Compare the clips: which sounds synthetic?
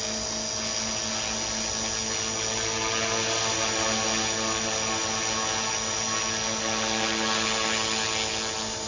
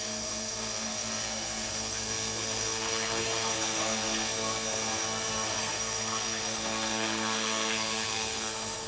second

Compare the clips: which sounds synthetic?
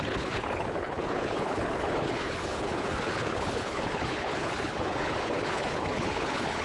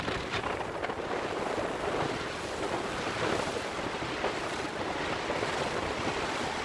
first